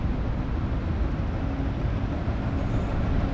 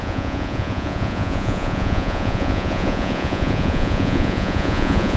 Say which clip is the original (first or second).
first